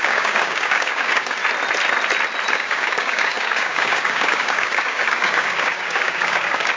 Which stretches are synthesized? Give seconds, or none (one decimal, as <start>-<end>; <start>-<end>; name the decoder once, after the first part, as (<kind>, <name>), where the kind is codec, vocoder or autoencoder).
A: 0.0-1.4 (codec, DAC); 2.5-6.8